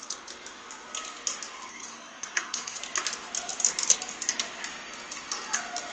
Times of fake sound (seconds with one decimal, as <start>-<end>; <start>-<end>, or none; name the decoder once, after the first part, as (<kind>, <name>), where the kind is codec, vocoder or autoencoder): 1.7-2.8 (codec, SNAC)